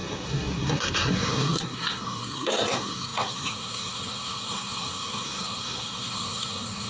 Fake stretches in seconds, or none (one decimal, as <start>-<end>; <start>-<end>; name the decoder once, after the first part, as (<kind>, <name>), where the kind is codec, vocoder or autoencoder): 0.0-6.9 (codec, SNAC)